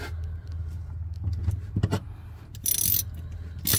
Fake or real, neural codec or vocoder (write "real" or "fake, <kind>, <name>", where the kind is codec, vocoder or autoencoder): real